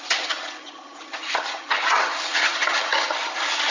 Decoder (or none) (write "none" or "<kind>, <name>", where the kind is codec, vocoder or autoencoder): vocoder, HiFi-GAN